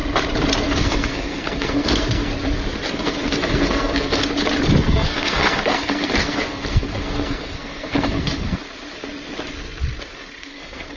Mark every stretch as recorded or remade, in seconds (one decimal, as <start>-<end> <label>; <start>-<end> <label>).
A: 0.0-0.8 recorded; 0.8-2.3 remade; 2.3-2.9 recorded; 2.9-4.2 remade; 4.2-4.8 recorded; 4.8-8.6 remade; 8.6-10.4 recorded; 10.4-11.0 remade